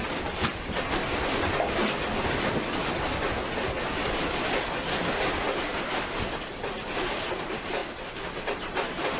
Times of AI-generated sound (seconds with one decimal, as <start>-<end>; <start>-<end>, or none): none